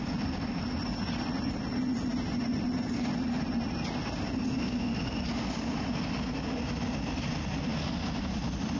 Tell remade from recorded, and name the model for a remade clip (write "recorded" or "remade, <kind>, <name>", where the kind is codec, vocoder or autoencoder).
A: recorded